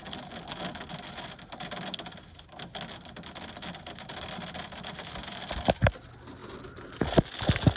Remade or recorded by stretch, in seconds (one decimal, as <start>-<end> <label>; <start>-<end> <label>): 0.0-7.8 recorded